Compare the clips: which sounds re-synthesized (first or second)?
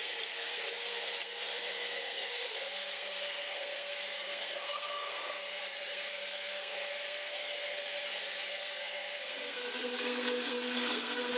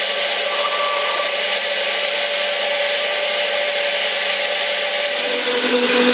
first